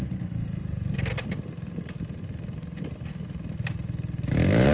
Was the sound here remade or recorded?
recorded